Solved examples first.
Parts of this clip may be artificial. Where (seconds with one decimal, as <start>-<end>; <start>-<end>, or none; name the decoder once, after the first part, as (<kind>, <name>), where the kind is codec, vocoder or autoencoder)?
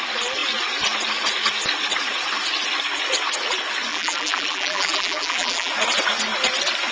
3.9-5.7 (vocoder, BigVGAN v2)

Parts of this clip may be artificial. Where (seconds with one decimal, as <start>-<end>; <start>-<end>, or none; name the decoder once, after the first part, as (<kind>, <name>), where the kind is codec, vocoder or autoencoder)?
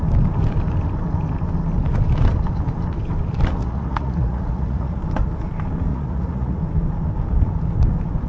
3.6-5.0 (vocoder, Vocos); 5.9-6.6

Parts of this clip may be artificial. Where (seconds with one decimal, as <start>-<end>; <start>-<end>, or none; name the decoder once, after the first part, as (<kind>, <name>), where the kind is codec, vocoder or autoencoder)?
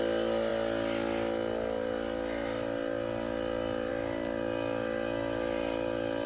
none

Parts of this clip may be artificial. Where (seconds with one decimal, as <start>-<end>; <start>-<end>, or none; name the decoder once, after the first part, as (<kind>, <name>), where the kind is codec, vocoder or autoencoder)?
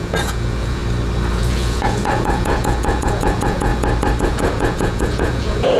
0.0-0.8 (vocoder, Vocos); 1.3-3.7; 4.2-5.8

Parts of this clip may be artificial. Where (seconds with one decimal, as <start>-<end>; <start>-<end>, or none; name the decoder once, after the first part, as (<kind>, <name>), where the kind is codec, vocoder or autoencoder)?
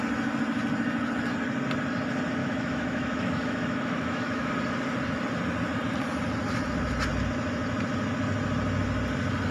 2.4-4.5 (autoencoder, DAC-VAE)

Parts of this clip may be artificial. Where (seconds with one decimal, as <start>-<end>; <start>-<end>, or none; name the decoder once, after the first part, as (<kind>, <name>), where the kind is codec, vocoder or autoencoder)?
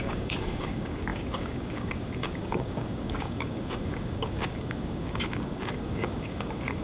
0.0-6.8 (codec, DAC)